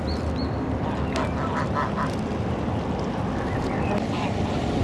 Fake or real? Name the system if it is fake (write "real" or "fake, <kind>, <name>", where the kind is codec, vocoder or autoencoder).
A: real